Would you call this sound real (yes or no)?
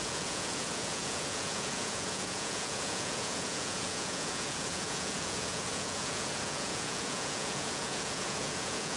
no